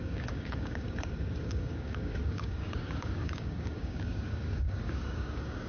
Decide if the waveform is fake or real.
fake